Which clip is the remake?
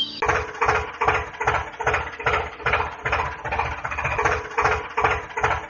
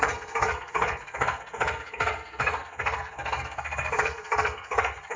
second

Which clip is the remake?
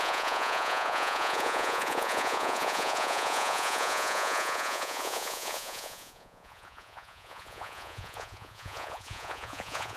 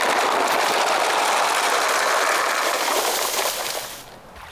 first